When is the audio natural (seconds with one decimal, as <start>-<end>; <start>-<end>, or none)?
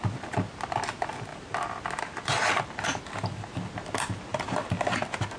0.0-1.3; 3.0-4.3; 4.8-5.4